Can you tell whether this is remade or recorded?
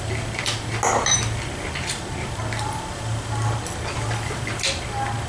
recorded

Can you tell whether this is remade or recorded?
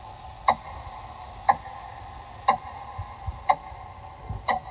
recorded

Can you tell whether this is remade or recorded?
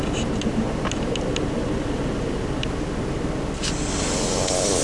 recorded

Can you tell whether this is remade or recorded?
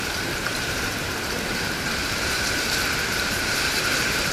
remade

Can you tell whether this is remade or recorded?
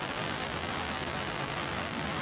remade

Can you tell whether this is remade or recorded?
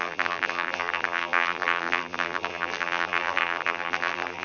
remade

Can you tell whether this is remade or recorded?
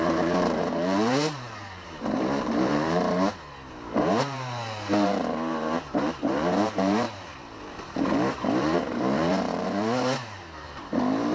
remade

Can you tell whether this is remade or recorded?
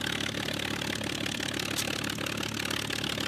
remade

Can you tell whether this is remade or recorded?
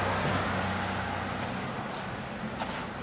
recorded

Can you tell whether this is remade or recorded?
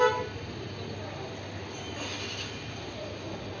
recorded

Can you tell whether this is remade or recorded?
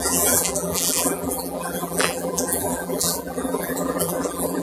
remade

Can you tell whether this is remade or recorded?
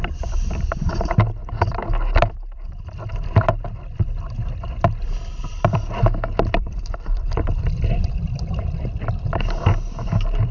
remade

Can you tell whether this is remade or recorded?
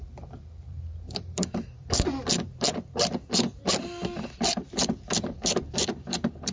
remade